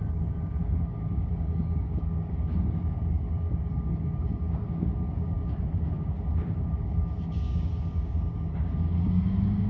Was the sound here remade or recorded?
remade